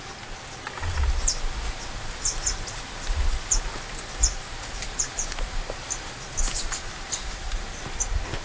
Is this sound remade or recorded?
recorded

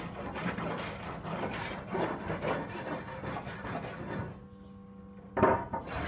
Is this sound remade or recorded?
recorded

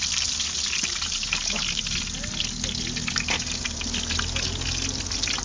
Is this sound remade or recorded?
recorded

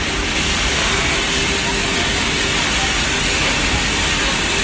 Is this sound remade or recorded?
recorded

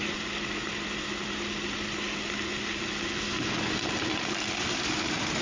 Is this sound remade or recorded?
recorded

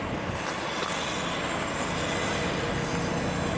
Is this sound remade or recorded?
recorded